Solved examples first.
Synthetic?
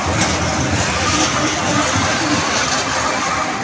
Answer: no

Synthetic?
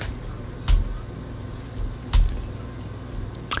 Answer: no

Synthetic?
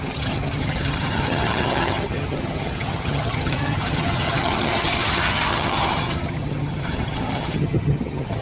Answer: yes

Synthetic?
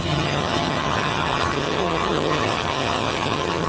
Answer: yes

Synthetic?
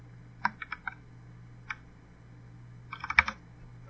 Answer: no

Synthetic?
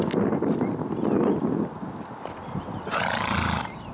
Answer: no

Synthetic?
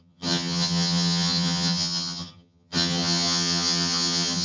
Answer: yes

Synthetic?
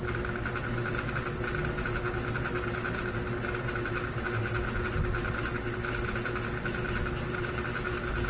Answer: no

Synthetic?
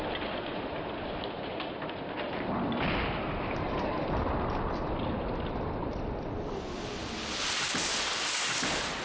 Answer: no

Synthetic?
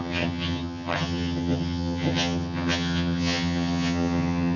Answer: yes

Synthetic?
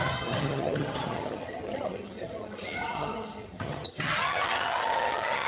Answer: yes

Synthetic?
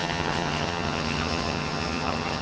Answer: yes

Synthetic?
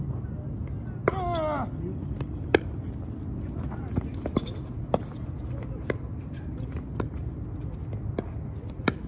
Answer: no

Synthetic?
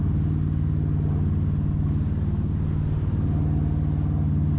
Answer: no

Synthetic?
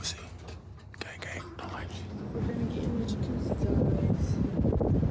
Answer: no